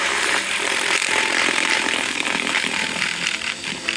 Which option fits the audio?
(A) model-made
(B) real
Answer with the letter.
A